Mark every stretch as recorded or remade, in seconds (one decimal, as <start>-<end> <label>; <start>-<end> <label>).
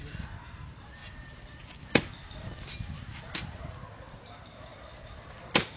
0.0-4.7 remade; 4.7-5.8 recorded